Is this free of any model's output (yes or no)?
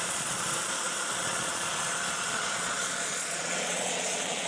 no